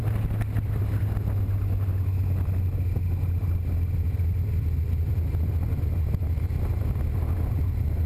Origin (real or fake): real